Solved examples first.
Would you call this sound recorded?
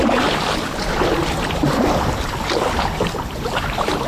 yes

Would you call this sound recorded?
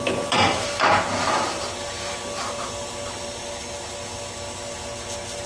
yes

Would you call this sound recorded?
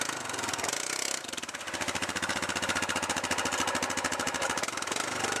yes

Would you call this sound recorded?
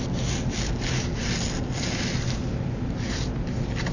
yes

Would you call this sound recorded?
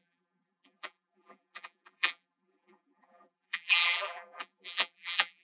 no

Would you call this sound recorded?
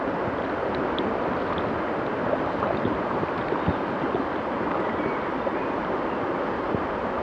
yes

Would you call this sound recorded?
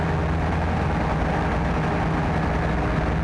yes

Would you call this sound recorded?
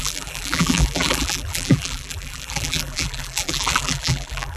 no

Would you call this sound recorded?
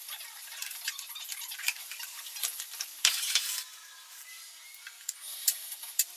no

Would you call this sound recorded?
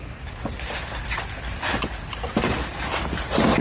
yes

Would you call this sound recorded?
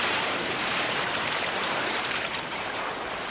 no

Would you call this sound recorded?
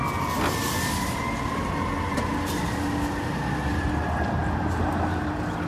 yes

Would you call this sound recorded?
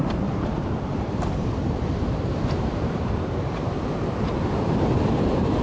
no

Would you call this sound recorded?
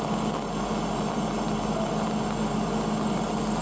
yes